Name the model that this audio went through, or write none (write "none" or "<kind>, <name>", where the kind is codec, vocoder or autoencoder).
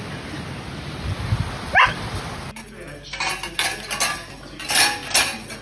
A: none